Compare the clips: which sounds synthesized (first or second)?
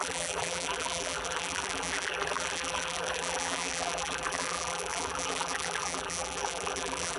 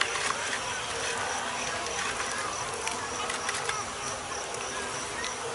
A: first